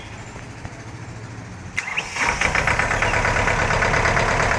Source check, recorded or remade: recorded